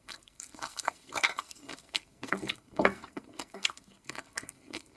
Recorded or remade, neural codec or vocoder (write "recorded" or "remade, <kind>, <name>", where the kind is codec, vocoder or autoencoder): remade, codec, SNAC